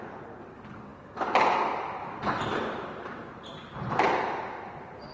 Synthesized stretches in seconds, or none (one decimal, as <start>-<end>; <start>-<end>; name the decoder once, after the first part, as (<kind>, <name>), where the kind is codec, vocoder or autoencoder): none

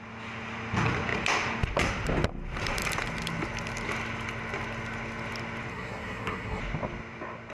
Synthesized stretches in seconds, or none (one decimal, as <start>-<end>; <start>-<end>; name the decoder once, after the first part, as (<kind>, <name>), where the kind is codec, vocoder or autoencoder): 5.7-6.6 (codec, SNAC)